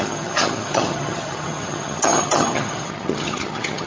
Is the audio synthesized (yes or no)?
yes